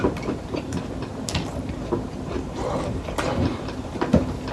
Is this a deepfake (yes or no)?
yes